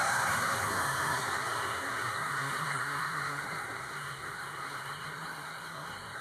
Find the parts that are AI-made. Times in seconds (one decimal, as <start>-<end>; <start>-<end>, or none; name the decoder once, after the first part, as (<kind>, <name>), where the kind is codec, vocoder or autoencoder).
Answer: 0.0-6.2 (codec, SNAC)